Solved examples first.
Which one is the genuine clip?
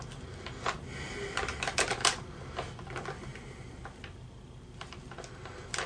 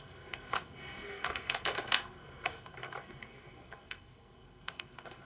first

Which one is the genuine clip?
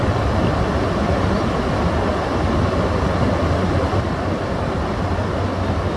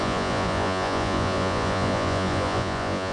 first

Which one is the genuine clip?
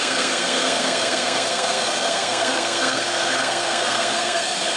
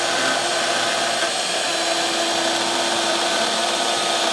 second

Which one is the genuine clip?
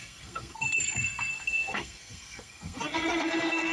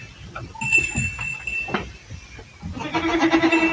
second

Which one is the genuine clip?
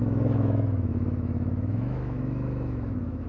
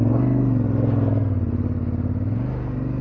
second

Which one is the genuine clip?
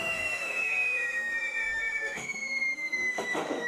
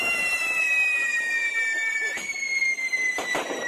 second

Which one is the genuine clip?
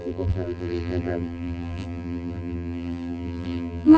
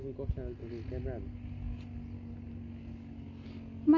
second